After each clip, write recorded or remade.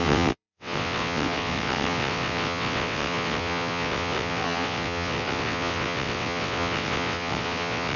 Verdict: remade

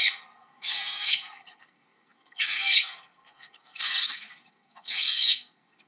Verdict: remade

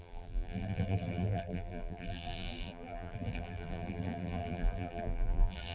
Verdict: remade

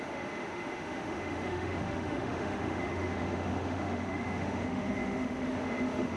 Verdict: remade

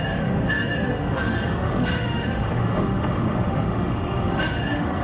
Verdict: remade